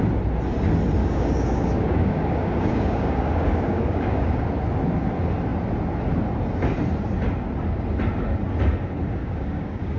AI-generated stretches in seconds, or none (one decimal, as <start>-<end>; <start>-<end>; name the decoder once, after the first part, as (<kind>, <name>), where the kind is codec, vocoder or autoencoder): 1.0-4.5 (codec, DAC); 9.2-10.0